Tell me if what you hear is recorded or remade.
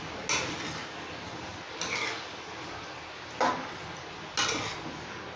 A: recorded